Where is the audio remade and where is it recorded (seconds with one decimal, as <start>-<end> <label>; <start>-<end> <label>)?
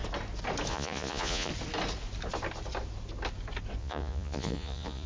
0.0-0.7 recorded; 0.7-1.5 remade; 1.5-3.8 recorded; 3.8-5.1 remade